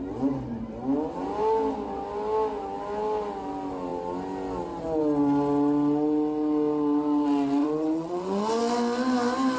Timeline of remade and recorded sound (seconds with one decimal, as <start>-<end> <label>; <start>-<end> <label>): 0.0-7.6 recorded; 7.6-8.6 remade; 8.6-9.6 recorded